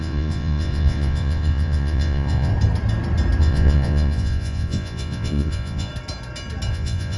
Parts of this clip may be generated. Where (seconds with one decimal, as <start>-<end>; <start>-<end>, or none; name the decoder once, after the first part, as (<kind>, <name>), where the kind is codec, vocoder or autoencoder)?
0.0-2.5 (vocoder, Vocos); 3.4-5.9; 6.7-7.2